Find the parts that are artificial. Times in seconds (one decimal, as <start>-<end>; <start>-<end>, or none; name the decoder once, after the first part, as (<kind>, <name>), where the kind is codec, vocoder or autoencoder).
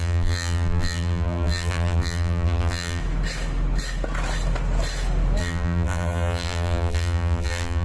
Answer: 0.0-3.0 (vocoder, BigVGAN v2); 5.4-7.8